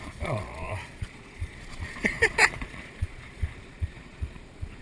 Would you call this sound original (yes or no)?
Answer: no